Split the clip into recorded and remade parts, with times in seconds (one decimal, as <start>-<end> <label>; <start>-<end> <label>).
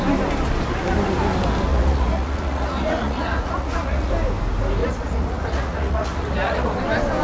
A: 0.0-1.7 recorded; 1.7-4.1 remade; 4.1-4.8 recorded; 4.8-6.8 remade; 6.8-7.2 recorded